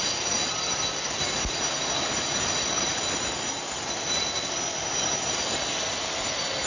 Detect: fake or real real